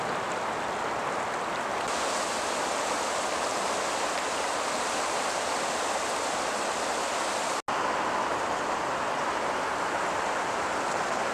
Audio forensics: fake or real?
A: real